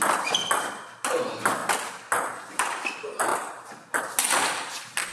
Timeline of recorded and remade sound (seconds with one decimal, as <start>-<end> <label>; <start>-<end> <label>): 0.0-5.1 recorded